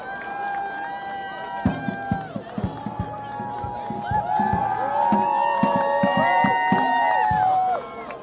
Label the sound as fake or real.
real